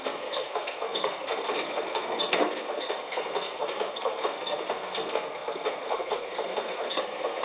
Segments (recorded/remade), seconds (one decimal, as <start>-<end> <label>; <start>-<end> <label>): 0.0-7.4 remade